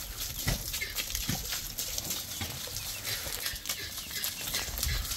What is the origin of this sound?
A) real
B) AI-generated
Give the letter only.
A